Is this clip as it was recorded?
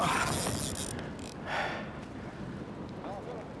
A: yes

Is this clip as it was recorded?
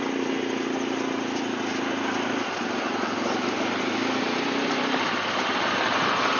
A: yes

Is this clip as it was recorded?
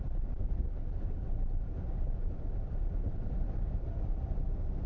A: yes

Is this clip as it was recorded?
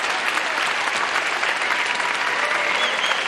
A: yes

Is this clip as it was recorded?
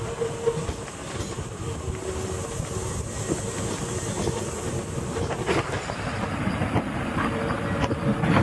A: yes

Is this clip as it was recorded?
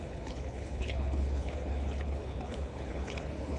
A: no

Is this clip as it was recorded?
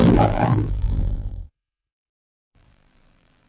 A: no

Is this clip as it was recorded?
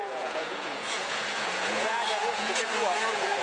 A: no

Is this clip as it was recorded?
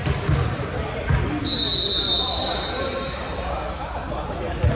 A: yes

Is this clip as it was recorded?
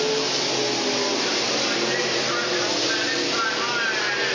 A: yes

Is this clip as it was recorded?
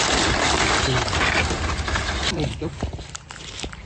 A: yes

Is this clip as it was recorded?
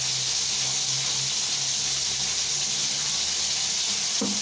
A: yes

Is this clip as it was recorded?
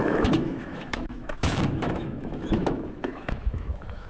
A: no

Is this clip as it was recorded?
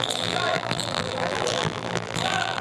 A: no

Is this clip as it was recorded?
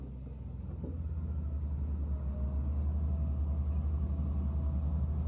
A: yes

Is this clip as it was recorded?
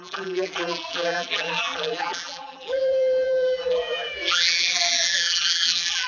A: no